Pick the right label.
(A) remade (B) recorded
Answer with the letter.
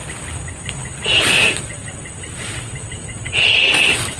B